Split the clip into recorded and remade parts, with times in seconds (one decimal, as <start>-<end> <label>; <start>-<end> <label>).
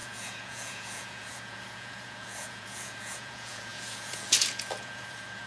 0.0-5.5 remade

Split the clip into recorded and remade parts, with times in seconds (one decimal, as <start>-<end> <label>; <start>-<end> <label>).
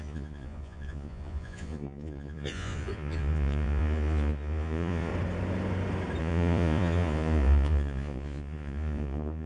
0.0-5.1 remade; 5.1-6.2 recorded; 6.2-9.5 remade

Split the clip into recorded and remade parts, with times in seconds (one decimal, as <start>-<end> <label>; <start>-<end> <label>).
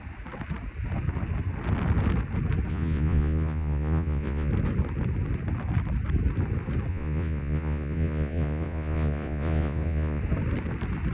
0.0-2.7 recorded; 2.7-4.5 remade; 4.5-6.9 recorded; 6.9-10.2 remade; 10.2-11.1 recorded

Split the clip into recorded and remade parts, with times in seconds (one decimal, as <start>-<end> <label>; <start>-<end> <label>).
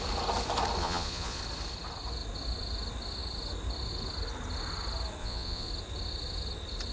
0.0-0.8 recorded; 0.8-1.4 remade; 1.4-5.2 recorded; 5.2-5.7 remade; 5.7-6.9 recorded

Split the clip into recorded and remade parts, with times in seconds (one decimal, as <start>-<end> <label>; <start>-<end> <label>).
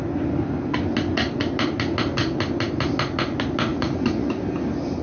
0.0-3.7 recorded; 3.7-4.3 remade; 4.3-5.0 recorded